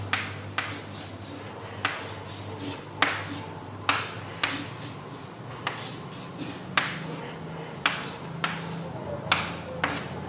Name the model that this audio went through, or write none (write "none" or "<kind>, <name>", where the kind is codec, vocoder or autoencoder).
none